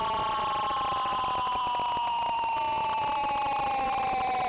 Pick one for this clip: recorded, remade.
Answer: recorded